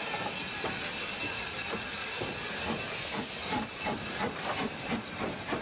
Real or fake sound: real